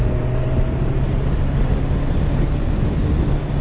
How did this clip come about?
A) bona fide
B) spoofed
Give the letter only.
A